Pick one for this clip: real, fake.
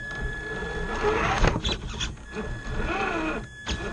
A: real